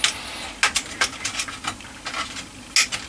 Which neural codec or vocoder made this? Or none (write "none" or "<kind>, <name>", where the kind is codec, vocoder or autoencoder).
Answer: none